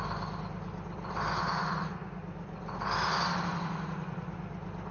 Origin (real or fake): real